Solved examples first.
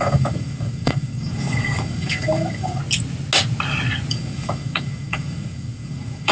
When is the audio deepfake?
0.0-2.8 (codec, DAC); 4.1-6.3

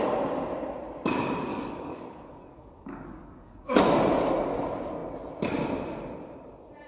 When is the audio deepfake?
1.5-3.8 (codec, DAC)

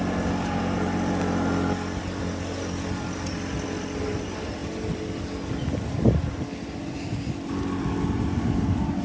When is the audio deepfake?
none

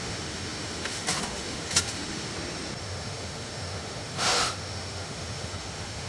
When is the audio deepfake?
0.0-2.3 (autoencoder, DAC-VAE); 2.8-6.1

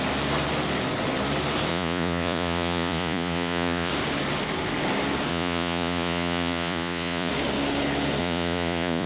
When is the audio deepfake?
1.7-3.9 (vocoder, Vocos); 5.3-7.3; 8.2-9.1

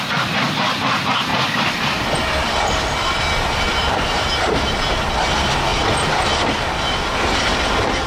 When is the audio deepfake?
1.3-4.4 (vocoder, BigVGAN v2)

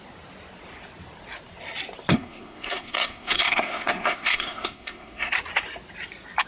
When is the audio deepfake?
2.1-5.3 (codec, SNAC)